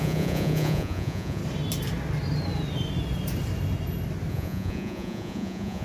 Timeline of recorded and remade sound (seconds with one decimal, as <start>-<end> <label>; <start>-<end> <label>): 0.0-1.4 remade; 1.4-4.3 recorded; 4.3-5.8 remade